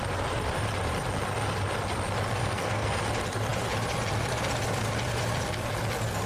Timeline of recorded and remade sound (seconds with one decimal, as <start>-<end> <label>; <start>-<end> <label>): 0.0-2.4 recorded; 2.4-3.0 remade; 3.0-6.3 recorded